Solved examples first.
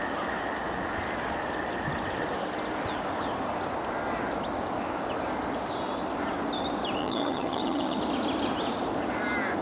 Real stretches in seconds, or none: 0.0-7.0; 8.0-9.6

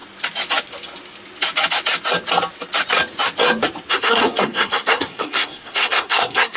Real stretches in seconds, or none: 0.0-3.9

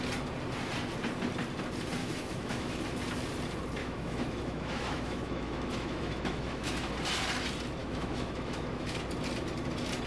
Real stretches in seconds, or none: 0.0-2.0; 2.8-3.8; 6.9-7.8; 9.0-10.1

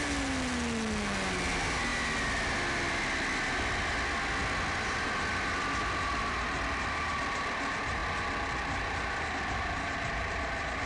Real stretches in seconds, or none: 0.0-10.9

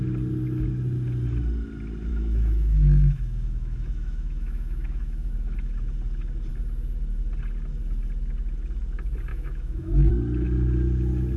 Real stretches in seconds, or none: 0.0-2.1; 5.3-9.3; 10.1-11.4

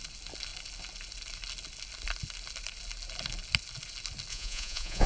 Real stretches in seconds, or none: 0.0-4.3